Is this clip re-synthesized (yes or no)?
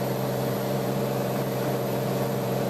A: yes